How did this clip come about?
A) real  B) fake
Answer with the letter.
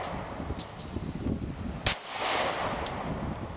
A